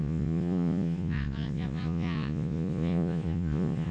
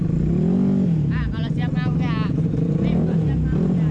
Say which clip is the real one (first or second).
second